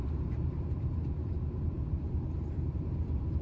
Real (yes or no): no